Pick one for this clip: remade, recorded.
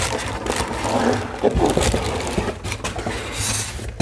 recorded